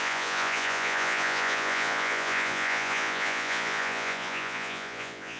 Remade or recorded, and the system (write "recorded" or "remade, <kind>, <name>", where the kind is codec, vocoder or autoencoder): remade, vocoder, Vocos